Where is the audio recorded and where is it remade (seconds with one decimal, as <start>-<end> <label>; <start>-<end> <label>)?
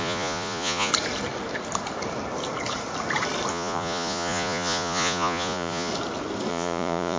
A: 0.0-0.9 remade; 0.9-3.5 recorded; 3.5-5.9 remade; 5.9-6.5 recorded; 6.5-7.2 remade